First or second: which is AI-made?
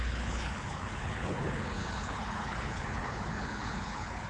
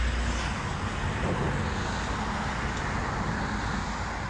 first